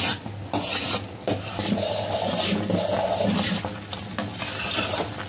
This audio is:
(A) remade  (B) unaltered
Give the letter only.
B